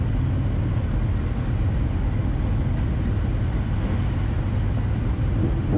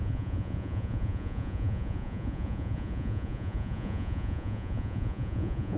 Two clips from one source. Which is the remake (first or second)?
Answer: second